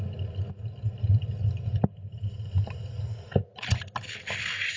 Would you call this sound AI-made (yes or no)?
no